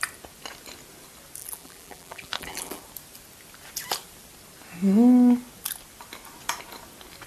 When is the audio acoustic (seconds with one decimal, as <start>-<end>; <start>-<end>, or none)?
0.0-1.4; 2.8-7.3